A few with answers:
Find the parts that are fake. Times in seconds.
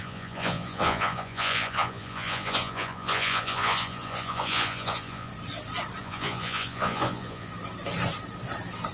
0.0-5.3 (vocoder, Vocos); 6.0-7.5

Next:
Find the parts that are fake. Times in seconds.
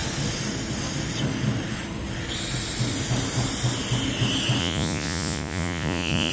4.6-6.3 (vocoder, Vocos)